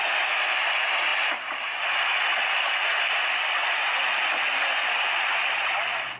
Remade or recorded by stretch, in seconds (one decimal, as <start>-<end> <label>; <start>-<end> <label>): 0.0-6.2 recorded